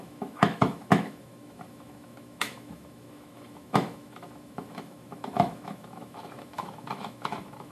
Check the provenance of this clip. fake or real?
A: fake